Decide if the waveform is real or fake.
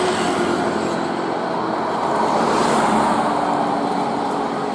real